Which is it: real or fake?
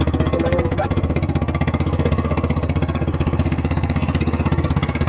fake